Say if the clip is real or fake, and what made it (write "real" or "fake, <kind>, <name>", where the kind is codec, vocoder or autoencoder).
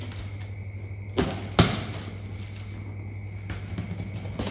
real